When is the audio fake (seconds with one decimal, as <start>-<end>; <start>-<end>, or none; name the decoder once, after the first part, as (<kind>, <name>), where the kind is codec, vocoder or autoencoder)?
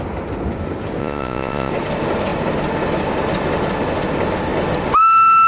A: 1.0-1.7 (vocoder, Vocos)